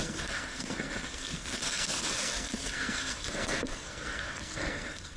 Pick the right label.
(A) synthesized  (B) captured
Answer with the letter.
A